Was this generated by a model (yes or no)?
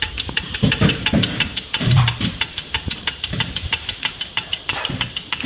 yes